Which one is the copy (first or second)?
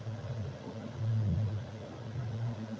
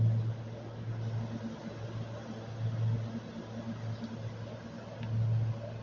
first